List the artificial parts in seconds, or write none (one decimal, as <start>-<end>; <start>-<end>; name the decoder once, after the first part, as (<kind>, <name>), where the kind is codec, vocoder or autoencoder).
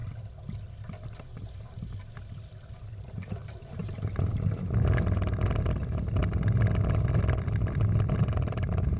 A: 2.9-6.2 (vocoder, BigVGAN v2); 8.2-9.0